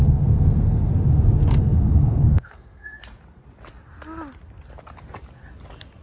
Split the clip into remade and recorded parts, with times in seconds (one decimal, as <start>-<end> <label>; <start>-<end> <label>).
0.0-0.9 remade; 0.9-1.6 recorded; 1.6-3.0 remade; 3.0-6.0 recorded